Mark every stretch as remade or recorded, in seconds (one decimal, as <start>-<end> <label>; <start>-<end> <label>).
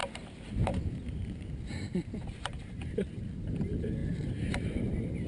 0.0-5.3 remade